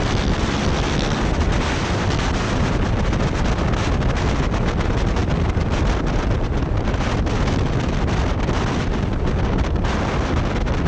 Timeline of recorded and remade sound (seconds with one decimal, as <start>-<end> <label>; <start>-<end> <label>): 0.0-5.2 recorded; 5.2-6.8 remade; 6.8-10.9 recorded